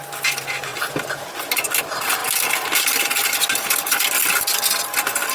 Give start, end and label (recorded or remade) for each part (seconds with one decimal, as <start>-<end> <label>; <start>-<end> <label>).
0.0-5.3 recorded